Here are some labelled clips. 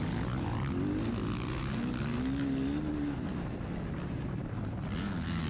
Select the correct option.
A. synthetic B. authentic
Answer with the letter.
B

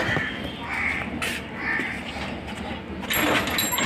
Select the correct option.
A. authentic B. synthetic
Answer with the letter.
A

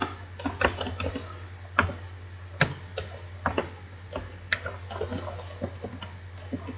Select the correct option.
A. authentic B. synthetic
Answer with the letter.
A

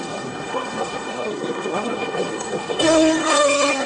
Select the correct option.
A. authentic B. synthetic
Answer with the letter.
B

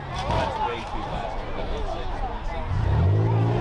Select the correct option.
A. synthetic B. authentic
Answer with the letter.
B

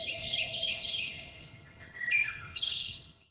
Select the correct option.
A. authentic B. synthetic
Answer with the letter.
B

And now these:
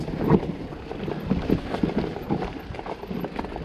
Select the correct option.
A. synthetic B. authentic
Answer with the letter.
B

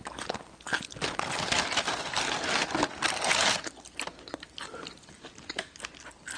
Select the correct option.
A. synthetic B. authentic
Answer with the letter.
B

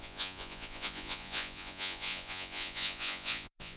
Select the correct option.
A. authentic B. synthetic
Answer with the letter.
B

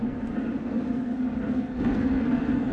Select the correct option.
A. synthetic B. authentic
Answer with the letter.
A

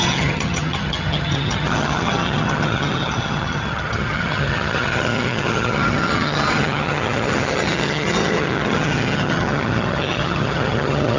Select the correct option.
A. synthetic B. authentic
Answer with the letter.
A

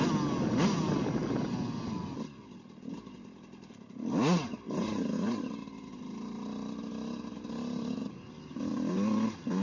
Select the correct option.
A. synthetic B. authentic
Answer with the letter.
B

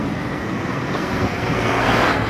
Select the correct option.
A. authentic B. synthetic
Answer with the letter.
B